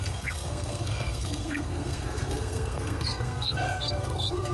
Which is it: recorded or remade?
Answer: remade